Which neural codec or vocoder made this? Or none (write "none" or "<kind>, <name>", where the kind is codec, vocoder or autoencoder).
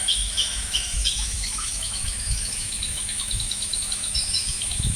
autoencoder, DAC-VAE